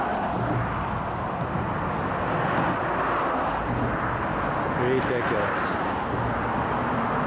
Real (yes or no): yes